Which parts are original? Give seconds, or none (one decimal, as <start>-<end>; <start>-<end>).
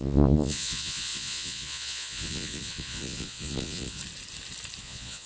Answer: 4.0-4.8